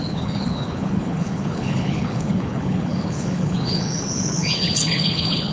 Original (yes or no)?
no